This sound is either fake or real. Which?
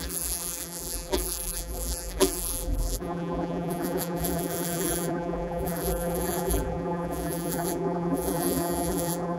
fake